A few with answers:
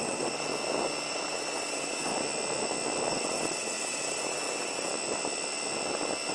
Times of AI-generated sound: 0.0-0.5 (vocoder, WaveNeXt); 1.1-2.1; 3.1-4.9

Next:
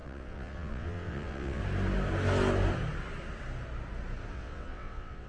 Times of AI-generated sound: 0.0-1.6 (vocoder, WaveNeXt); 4.3-5.3

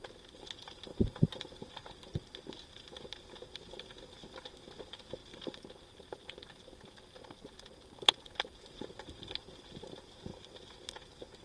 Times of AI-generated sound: 0.9-1.6 (vocoder, BigVGAN v2)

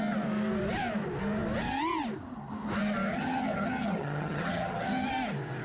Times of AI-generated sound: 3.1-5.1 (vocoder, HiFi-GAN)

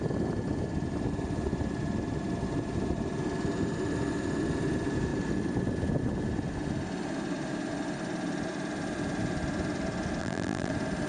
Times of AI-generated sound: 10.2-10.7 (vocoder, BigVGAN v2)